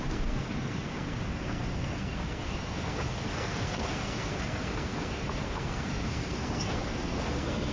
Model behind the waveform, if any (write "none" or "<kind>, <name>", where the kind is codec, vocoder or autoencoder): codec, SNAC